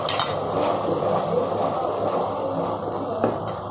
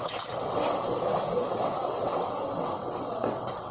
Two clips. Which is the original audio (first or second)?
first